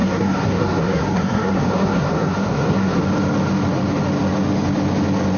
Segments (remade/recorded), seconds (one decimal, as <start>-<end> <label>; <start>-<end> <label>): 0.0-3.0 remade; 3.0-5.4 recorded